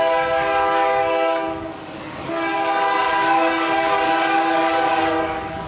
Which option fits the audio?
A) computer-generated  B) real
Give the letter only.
A